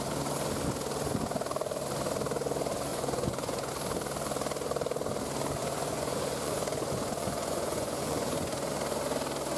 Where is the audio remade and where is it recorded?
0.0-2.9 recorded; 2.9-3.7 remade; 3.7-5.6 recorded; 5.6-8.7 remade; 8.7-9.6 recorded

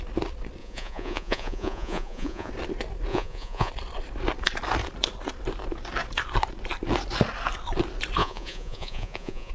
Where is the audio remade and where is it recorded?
0.0-0.6 recorded; 0.6-2.5 remade; 2.5-3.1 recorded; 3.1-3.7 remade; 3.7-8.2 recorded; 8.2-9.5 remade

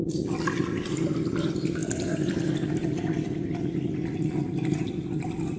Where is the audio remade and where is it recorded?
0.0-5.6 recorded

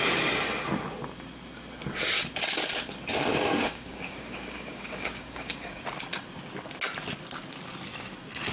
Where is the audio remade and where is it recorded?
0.0-3.3 recorded; 3.3-5.8 remade; 5.8-8.5 recorded

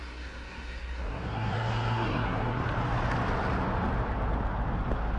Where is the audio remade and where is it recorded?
0.0-2.6 remade; 2.6-5.2 recorded

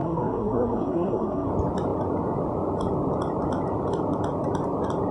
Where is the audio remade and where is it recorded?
0.0-1.5 remade; 1.5-5.1 recorded

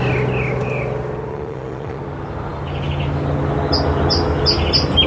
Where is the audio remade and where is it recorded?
0.0-1.3 recorded; 1.3-2.0 remade; 2.0-5.1 recorded

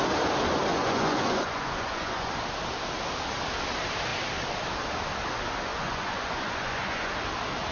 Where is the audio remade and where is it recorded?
0.0-0.7 recorded; 0.7-2.3 remade; 2.3-5.7 recorded; 5.7-7.1 remade; 7.1-7.7 recorded